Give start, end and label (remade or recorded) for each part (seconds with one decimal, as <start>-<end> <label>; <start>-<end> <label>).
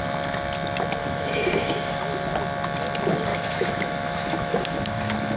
0.0-1.0 recorded; 1.0-2.0 remade; 2.0-3.3 recorded; 3.3-5.4 remade